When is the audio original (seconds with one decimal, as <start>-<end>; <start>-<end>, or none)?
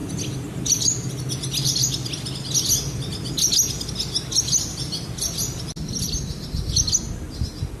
0.0-7.8